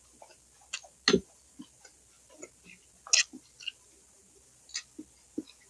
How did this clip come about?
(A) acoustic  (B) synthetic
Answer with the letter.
A